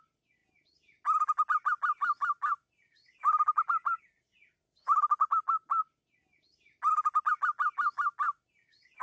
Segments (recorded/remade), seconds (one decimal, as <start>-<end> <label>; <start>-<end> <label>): 0.0-9.0 recorded